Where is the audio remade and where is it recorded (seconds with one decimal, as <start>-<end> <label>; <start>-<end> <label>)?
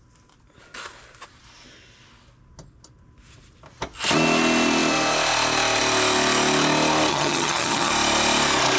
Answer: 0.0-7.1 recorded; 7.1-7.9 remade; 7.9-8.8 recorded